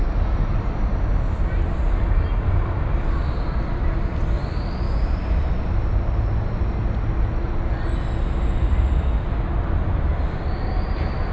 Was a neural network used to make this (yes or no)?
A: no